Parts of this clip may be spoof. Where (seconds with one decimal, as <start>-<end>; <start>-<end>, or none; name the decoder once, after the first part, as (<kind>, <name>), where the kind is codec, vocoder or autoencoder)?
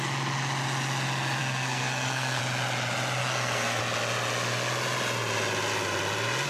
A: 1.4-2.4 (codec, SNAC); 3.2-3.8